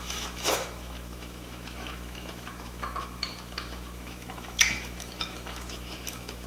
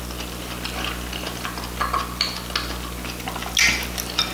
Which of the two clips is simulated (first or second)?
first